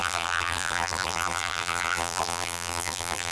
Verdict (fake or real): fake